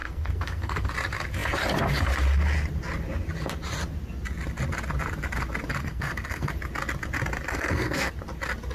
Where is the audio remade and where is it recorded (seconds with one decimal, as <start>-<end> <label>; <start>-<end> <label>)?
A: 0.0-0.9 remade; 0.9-5.8 recorded; 5.8-6.5 remade; 6.5-7.5 recorded; 7.5-8.1 remade; 8.1-8.7 recorded